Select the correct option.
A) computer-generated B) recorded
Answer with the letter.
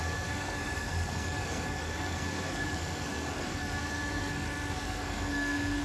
A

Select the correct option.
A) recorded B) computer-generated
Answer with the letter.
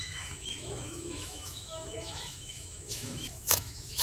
B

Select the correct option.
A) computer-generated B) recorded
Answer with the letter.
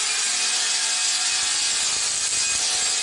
B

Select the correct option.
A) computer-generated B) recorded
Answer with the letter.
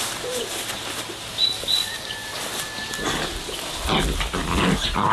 B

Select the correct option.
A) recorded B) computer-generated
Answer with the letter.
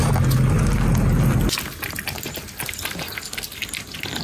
A